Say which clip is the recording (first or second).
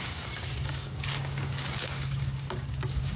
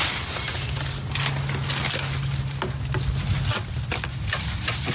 second